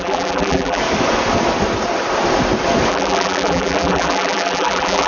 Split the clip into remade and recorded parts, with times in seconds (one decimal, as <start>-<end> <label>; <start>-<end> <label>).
0.0-0.8 remade; 0.8-2.9 recorded; 2.9-5.1 remade